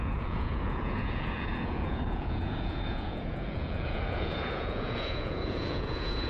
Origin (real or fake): fake